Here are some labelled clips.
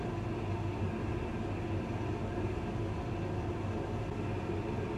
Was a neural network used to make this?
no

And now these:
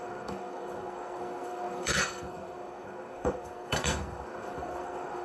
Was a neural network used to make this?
yes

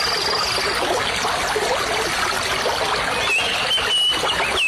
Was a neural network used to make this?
no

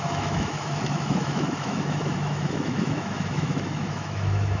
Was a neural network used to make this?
yes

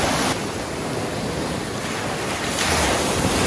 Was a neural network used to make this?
no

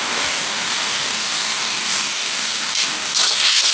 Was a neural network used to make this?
yes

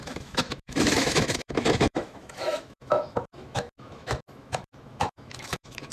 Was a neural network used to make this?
yes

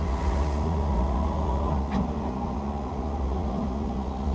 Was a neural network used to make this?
yes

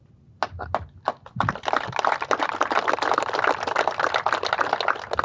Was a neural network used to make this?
no